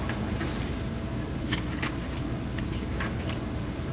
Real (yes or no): no